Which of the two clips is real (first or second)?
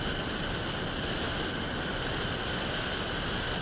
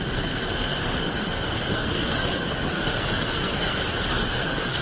first